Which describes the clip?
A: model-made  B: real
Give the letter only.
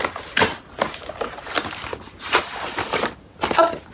B